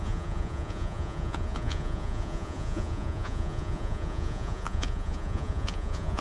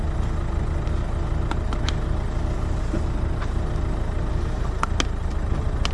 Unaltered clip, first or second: second